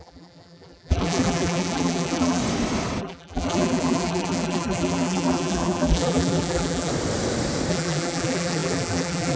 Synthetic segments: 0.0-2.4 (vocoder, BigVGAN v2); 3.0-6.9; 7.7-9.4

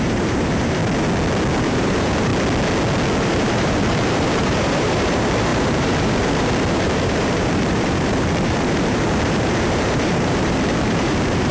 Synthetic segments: 0.0-0.8 (vocoder, BigVGAN v2); 1.6-2.3; 3.2-11.5

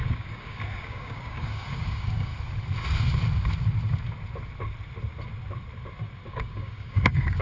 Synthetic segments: 0.0-2.3 (codec, DAC); 6.3-7.4

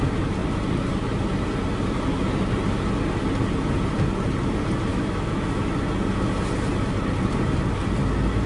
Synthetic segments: 4.9-5.6 (autoencoder, DAC-VAE)

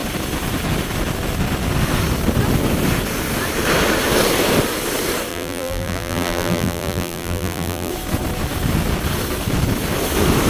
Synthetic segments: 5.3-7.9 (vocoder, BigVGAN v2)

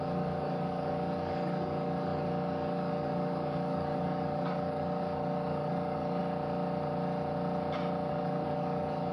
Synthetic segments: 0.0-6.2 (codec, DAC); 8.1-9.1

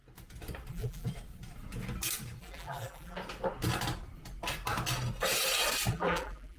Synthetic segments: 0.7-1.1 (vocoder, BigVGAN v2); 2.4-3.2; 5.9-6.6